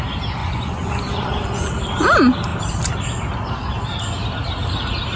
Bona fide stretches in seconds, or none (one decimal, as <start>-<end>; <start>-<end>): 0.0-0.4; 1.7-5.2